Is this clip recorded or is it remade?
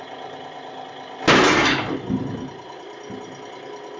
recorded